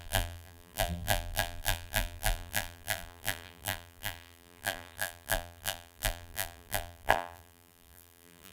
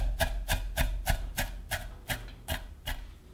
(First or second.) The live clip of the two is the second